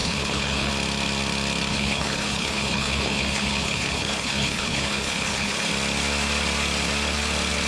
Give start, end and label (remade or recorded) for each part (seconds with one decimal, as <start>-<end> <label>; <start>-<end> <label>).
0.0-0.7 remade; 0.7-1.7 recorded; 1.7-5.7 remade; 5.7-7.7 recorded